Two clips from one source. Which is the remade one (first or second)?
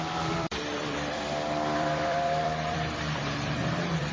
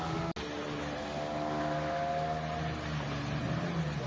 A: first